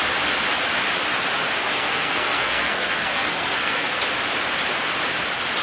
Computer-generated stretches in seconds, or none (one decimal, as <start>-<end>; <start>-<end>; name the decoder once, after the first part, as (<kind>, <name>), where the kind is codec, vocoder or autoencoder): 1.6-4.0 (codec, SNAC)

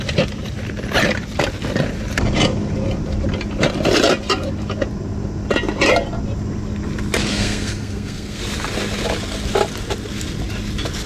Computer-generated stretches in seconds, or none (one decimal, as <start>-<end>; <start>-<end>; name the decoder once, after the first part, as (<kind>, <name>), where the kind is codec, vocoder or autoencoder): 7.3-8.4 (codec, SNAC)